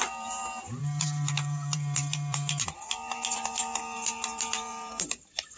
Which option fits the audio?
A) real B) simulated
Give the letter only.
B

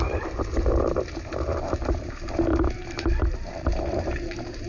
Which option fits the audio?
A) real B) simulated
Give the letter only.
B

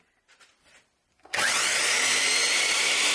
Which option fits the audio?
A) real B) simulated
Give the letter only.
A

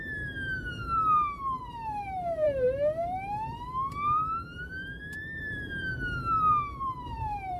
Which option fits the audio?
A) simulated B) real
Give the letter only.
A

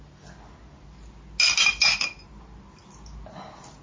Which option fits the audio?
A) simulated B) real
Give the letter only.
B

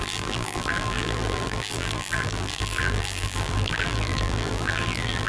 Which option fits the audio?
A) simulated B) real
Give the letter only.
A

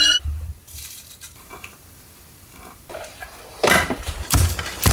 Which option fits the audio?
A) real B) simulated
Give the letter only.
B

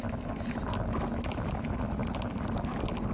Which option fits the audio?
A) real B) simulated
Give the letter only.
A